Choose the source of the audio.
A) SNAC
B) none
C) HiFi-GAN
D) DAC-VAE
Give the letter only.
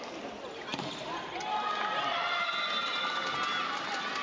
B